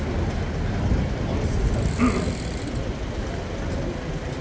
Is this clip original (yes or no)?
yes